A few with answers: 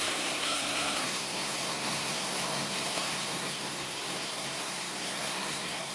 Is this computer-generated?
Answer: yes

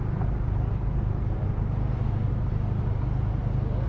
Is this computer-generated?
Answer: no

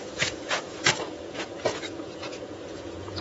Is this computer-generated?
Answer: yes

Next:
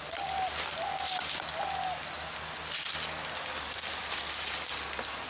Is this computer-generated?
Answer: no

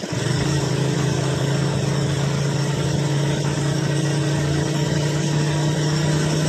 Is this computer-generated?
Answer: yes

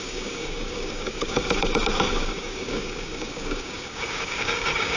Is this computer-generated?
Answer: yes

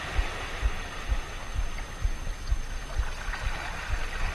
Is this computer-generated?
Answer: no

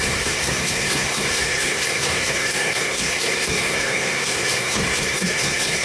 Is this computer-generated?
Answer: yes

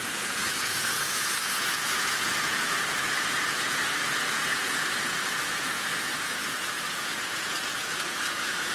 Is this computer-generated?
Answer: yes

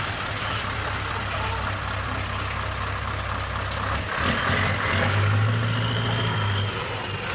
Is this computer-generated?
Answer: no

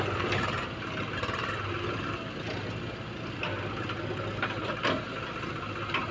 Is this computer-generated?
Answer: no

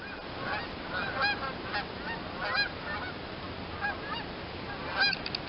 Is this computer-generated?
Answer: no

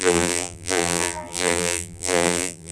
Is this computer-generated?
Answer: yes